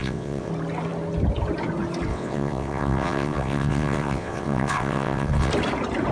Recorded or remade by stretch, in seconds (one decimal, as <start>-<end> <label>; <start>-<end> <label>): 0.0-0.5 remade; 0.5-2.1 recorded; 2.1-5.5 remade; 5.5-6.1 recorded